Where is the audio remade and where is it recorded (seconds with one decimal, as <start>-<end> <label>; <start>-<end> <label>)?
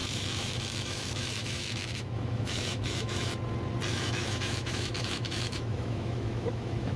0.0-3.3 remade; 3.3-3.9 recorded; 3.9-7.0 remade